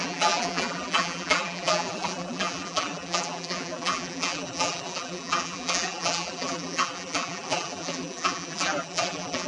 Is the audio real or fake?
fake